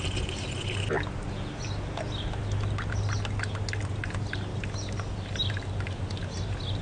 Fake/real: real